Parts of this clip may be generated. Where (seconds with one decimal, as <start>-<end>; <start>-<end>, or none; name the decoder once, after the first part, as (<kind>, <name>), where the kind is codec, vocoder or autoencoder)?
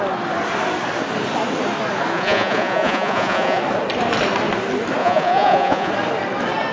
2.1-3.6 (vocoder, Vocos); 5.0-5.9